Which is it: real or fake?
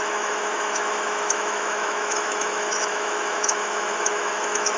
fake